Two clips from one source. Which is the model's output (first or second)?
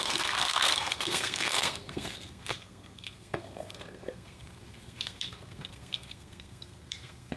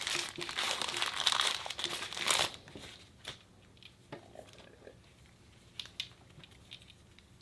first